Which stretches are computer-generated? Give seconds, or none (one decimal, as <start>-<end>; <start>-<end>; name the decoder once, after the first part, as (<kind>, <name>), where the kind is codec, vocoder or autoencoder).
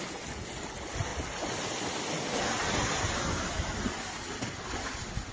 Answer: none